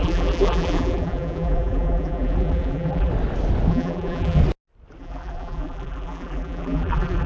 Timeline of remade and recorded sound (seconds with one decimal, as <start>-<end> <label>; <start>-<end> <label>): 0.0-3.1 remade; 3.1-3.7 recorded; 3.7-4.4 remade; 4.4-5.0 recorded; 5.0-7.3 remade